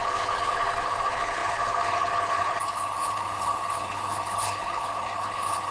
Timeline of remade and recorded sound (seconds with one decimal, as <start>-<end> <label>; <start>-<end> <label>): 0.0-5.7 remade